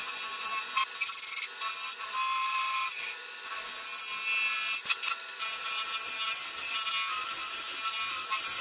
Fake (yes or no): no